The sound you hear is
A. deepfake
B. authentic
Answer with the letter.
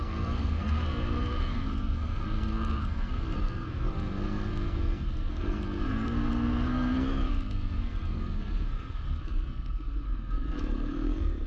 A